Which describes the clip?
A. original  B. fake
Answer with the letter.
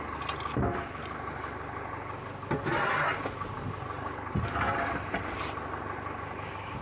A